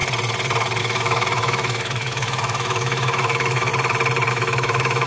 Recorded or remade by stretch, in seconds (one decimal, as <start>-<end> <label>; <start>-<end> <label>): 0.0-0.8 recorded; 0.8-3.7 remade; 3.7-4.3 recorded; 4.3-5.1 remade